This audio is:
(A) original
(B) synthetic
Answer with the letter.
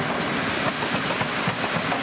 A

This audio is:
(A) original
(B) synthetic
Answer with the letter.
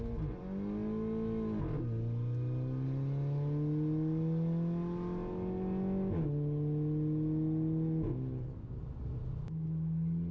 A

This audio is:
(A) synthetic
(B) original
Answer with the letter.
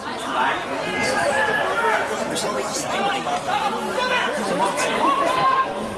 B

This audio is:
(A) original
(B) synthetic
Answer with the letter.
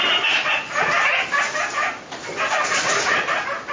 A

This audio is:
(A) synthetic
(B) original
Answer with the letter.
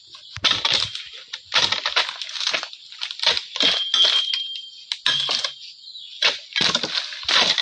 B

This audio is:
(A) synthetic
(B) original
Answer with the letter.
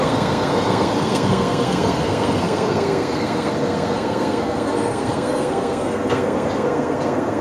A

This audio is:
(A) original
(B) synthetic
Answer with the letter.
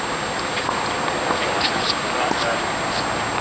A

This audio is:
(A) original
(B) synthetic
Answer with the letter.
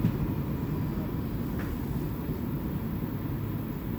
A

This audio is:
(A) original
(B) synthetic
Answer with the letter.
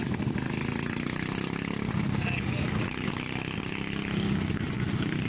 A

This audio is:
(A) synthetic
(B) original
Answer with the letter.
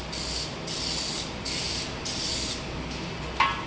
B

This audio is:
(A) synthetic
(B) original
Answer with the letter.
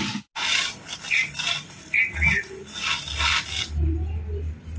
B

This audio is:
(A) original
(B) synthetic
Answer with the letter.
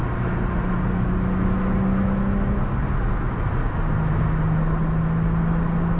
A